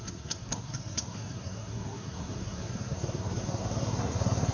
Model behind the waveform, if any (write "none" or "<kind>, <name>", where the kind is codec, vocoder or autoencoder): codec, SNAC